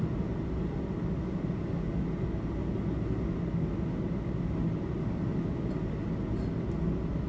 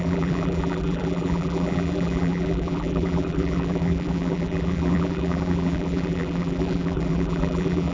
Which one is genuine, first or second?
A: first